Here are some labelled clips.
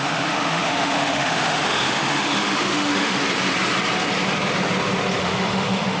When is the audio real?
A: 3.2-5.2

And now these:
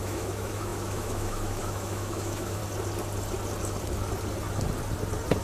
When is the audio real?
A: 2.6-5.4